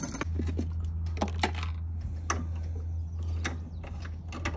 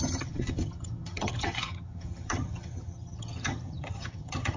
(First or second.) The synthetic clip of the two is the second